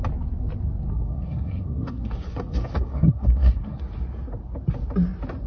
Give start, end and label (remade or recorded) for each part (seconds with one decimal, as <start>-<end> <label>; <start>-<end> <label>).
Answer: 0.0-0.9 recorded; 0.9-3.8 remade; 3.8-5.5 recorded